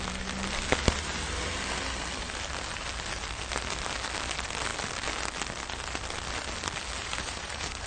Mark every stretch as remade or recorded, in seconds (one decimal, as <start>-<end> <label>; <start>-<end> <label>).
0.0-7.0 recorded; 7.0-7.9 remade

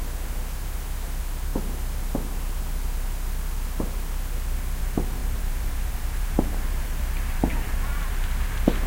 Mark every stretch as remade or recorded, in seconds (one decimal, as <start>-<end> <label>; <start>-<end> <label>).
0.0-5.2 recorded; 5.2-8.4 remade; 8.4-8.9 recorded

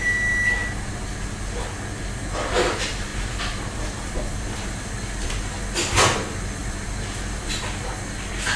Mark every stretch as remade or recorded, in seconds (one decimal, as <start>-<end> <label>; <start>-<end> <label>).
0.0-3.1 recorded; 3.1-4.9 remade; 4.9-6.6 recorded; 6.6-7.5 remade; 7.5-8.6 recorded